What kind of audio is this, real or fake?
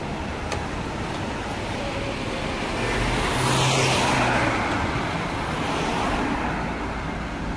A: real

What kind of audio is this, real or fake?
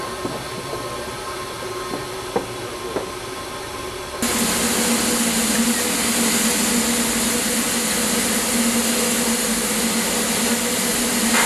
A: real